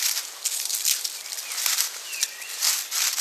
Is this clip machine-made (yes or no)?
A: no